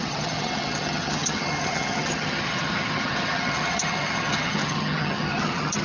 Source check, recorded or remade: remade